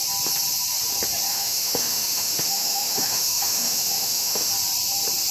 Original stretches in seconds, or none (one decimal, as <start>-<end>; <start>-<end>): 0.0-1.3; 4.5-5.3

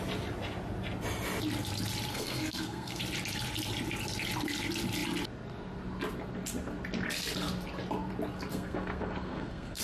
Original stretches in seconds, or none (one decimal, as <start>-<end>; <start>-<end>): 0.0-2.1; 3.0-8.5